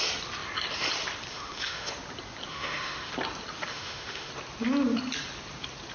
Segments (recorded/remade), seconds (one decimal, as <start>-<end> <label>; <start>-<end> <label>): 0.0-1.3 recorded; 1.3-1.9 remade; 1.9-2.5 recorded; 2.5-3.1 remade; 3.1-3.7 recorded; 3.7-4.3 remade; 4.3-5.9 recorded